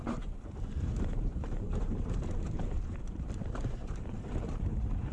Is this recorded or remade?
remade